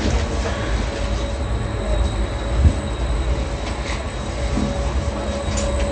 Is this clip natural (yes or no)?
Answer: yes